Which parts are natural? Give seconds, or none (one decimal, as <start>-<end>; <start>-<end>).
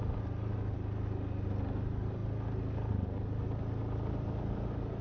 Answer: 0.0-5.0